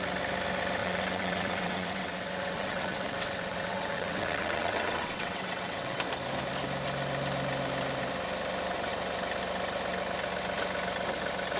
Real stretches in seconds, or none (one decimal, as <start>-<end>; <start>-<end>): 0.0-0.8; 6.0-11.6